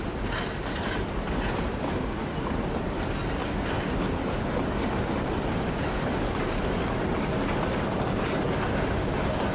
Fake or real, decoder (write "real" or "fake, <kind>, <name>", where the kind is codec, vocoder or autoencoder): real